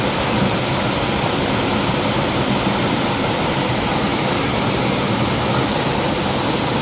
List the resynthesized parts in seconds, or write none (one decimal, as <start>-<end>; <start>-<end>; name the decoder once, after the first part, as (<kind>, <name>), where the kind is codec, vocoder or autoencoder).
none